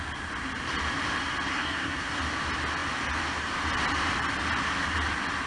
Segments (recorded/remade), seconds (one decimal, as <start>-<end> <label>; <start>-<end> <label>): 0.0-1.5 recorded; 1.5-2.2 remade; 2.2-5.5 recorded